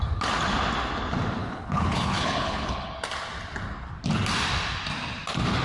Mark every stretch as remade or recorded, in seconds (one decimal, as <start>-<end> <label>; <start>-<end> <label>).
0.0-1.4 recorded; 1.4-2.9 remade; 2.9-5.6 recorded